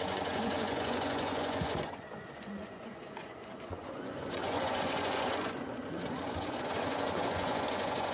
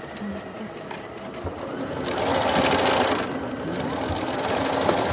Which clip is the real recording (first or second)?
second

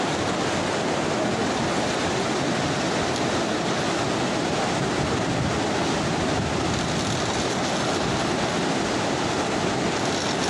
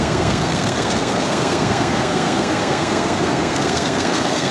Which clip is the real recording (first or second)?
first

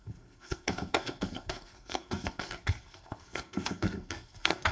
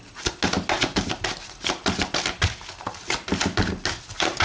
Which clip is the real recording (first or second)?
second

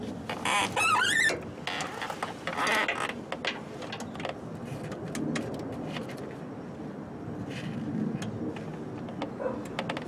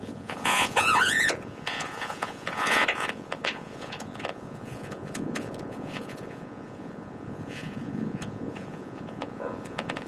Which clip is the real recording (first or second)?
first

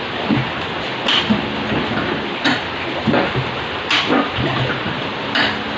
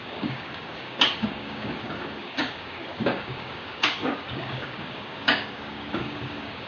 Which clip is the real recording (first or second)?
first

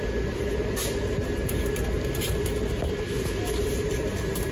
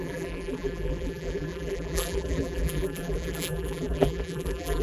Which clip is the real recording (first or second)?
first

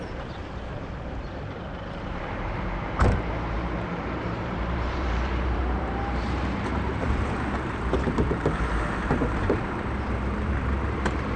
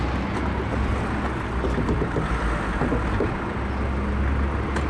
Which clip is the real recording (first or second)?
second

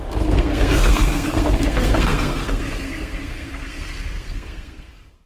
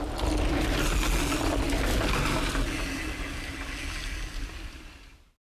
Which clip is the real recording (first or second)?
second